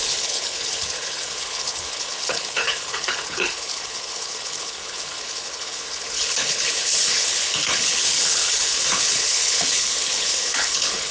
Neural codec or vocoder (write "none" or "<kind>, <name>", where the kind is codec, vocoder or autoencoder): codec, HILCodec